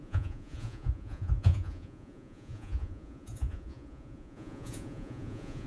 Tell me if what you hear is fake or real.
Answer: fake